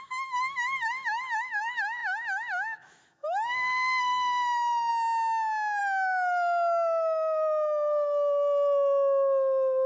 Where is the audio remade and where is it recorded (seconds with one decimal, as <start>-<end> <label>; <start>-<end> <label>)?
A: 0.0-4.9 remade; 4.9-5.8 recorded; 5.8-9.9 remade